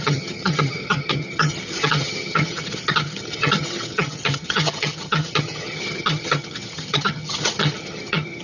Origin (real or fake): fake